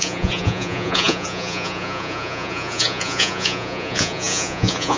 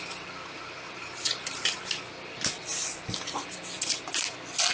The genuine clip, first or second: second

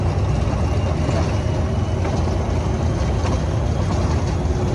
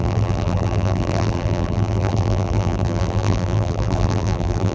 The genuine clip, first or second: first